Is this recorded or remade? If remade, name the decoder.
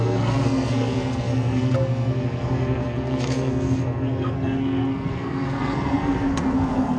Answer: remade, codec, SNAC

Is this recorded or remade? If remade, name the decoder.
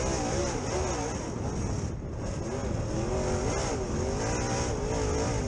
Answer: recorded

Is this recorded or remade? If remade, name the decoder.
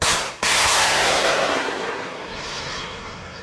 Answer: remade, codec, SNAC